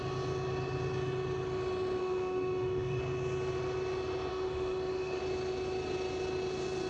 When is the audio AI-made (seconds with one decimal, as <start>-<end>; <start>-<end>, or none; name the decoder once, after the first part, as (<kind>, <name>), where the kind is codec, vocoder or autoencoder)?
2.0-3.0 (autoencoder, DAC-VAE); 4.3-5.2